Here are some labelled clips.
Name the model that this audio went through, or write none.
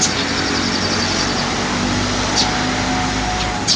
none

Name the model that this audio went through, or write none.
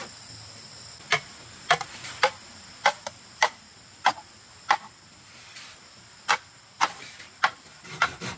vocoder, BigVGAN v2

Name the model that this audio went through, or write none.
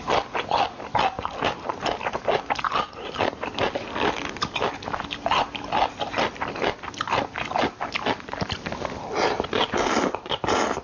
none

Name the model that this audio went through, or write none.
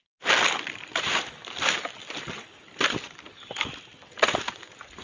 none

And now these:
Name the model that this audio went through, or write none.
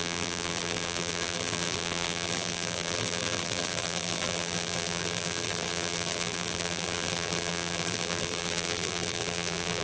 vocoder, BigVGAN v2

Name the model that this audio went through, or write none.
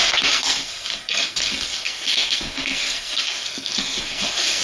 codec, SNAC